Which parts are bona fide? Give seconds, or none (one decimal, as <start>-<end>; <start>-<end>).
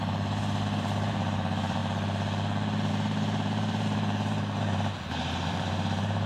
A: 1.8-2.9